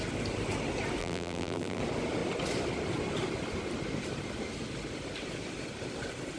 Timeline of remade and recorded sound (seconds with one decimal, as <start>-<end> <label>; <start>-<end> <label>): 0.0-1.0 recorded; 1.0-1.8 remade; 1.8-6.4 recorded